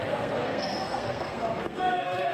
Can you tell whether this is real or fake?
fake